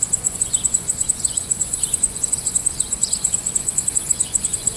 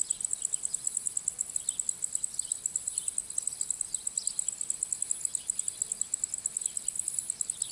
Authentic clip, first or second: second